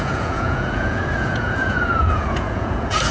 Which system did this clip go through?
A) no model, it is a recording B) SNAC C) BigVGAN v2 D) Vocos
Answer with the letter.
D